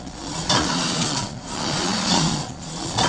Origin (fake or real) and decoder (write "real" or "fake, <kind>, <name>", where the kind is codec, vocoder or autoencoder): fake, vocoder, Vocos